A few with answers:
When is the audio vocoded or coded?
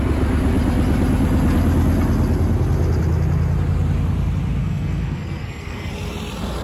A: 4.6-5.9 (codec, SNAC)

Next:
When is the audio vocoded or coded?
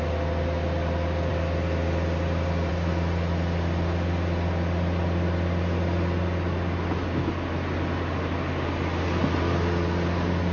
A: none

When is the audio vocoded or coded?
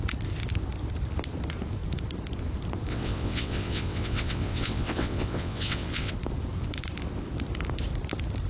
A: 2.9-6.1 (vocoder, WaveNeXt)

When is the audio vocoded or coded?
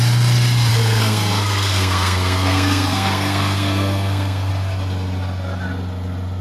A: 0.7-4.5 (codec, SNAC)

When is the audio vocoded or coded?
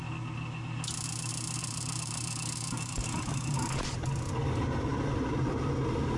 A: 1.6-3.0 (vocoder, BigVGAN v2)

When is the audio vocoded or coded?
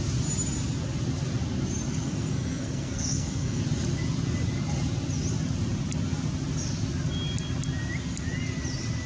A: 1.9-3.6 (codec, SNAC)